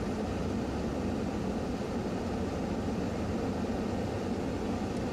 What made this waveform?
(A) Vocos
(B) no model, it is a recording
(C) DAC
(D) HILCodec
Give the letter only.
B